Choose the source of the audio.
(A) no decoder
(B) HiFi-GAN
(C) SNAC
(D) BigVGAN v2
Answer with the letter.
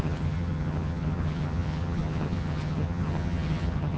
B